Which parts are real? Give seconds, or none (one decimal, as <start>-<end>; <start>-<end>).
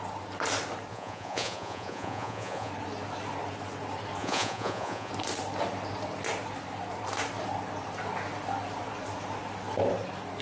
0.0-0.9; 2.7-4.2; 5.1-10.4